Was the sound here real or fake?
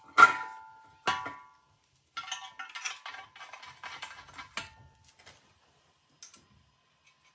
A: real